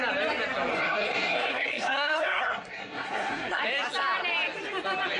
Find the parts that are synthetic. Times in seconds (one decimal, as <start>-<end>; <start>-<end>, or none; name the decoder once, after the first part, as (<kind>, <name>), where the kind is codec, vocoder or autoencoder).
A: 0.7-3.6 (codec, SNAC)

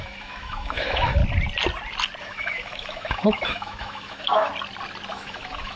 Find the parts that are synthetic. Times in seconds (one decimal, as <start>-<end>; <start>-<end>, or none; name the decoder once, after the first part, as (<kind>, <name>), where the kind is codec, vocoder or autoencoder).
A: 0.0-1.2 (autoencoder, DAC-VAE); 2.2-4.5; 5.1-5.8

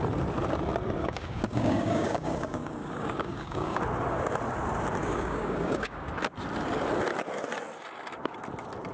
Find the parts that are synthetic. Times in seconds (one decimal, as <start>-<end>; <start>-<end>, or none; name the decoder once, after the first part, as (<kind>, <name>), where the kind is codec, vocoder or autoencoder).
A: 1.0-3.8 (codec, DAC); 5.0-6.1

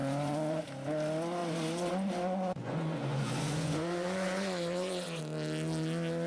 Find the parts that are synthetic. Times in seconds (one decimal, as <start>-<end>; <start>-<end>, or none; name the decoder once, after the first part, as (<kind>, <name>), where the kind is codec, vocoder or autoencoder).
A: 0.0-0.6 (vocoder, Vocos); 1.4-5.2